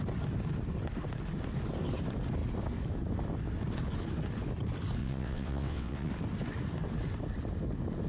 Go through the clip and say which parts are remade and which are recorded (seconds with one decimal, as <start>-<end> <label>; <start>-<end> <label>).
0.0-5.0 recorded; 5.0-6.1 remade; 6.1-8.1 recorded